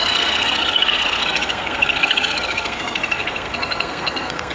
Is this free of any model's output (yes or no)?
no